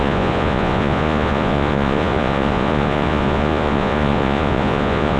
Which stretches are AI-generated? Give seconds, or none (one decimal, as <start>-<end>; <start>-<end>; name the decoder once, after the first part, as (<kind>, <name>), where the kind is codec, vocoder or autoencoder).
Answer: 0.0-5.2 (vocoder, Vocos)